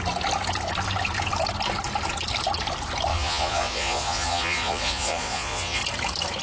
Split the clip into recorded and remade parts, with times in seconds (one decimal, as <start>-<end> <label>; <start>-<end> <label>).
0.0-3.1 recorded; 3.1-5.8 remade; 5.8-6.4 recorded